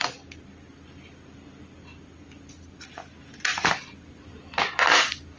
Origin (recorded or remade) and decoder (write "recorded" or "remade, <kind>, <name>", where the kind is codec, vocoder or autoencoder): recorded